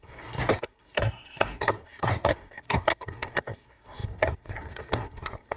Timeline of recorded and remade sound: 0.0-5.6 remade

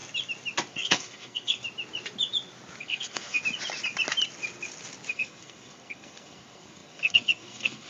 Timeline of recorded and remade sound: 0.0-0.7 recorded; 0.7-1.6 remade; 1.6-2.8 recorded; 2.8-3.4 remade; 3.4-5.1 recorded; 5.1-7.9 remade

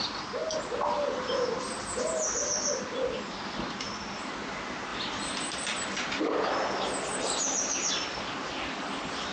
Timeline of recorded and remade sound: 0.0-9.3 recorded

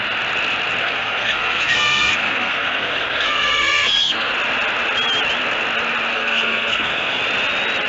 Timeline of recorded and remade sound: 0.0-0.8 recorded; 0.8-4.3 remade; 4.3-6.1 recorded; 6.1-7.2 remade; 7.2-7.9 recorded

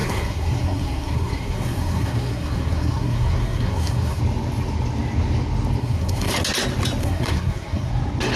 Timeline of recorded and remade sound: 0.0-4.2 remade; 4.2-5.8 recorded; 5.8-6.3 remade; 6.3-7.0 recorded; 7.0-7.9 remade; 7.9-8.4 recorded

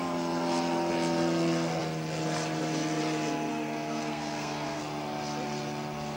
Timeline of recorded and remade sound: 0.0-3.5 recorded; 3.5-4.8 remade; 4.8-6.2 recorded